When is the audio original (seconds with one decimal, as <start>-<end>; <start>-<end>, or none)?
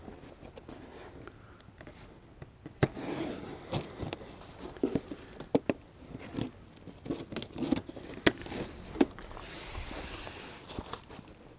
0.0-11.6